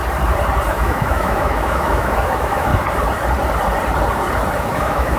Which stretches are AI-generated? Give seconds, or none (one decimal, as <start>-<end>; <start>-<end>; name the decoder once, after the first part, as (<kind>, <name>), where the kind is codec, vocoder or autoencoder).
0.7-2.7 (autoencoder, DAC-VAE); 4.6-5.2